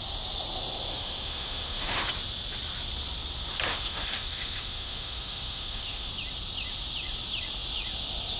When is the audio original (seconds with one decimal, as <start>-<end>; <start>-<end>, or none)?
0.0-0.9; 2.0-3.7; 6.1-8.4